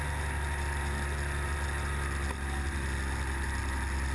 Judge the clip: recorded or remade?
recorded